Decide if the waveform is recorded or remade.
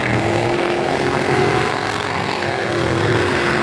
remade